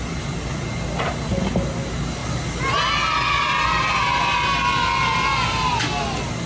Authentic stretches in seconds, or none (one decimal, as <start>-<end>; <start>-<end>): 0.0-6.5